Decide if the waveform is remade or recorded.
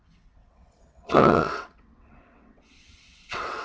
remade